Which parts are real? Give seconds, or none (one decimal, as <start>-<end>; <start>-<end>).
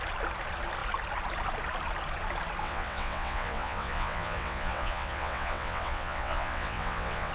0.0-2.6